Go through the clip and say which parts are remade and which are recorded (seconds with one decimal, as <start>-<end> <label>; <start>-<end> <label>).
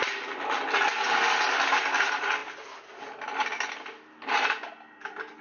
0.0-5.4 recorded